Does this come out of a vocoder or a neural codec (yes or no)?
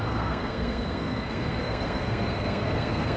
yes